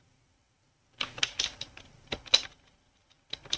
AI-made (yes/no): no